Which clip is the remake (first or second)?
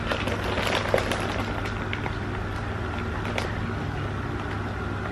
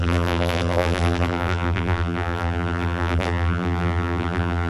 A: second